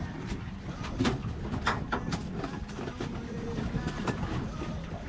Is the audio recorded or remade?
recorded